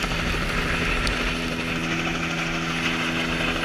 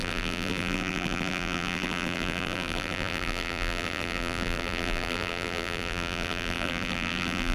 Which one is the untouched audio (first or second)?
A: first